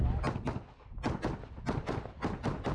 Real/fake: real